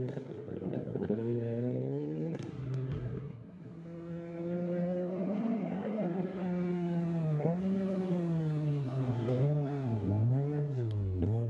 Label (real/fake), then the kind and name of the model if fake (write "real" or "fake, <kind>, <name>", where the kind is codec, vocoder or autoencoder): fake, codec, SNAC